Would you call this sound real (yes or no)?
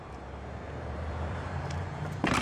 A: no